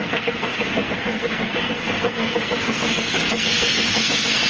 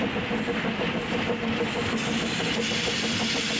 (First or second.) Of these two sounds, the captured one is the second